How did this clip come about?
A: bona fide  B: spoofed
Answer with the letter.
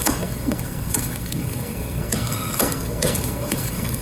B